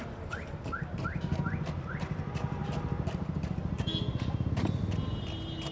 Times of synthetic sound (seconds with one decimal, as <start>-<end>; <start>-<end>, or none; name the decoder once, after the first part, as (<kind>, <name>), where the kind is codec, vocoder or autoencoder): none